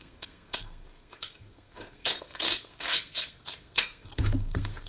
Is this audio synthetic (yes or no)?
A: yes